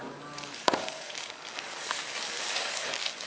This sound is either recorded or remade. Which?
remade